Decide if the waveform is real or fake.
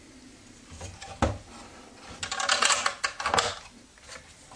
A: real